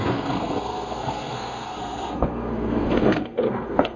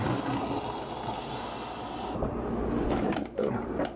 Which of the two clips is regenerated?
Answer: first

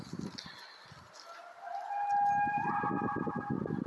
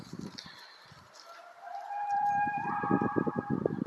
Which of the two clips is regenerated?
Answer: second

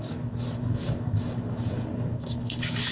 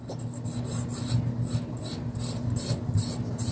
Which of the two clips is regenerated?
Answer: first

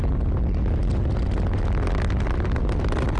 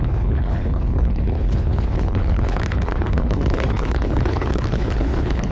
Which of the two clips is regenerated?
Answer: second